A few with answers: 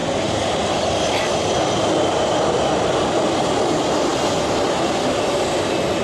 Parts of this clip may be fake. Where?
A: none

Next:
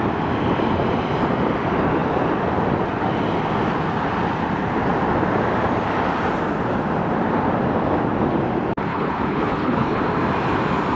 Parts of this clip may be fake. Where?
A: 8.9-10.0 (codec, HILCodec)